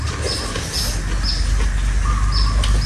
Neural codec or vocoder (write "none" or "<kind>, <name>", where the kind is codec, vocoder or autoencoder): none